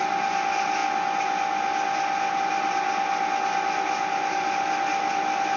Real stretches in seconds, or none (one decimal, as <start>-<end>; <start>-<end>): 0.0-5.6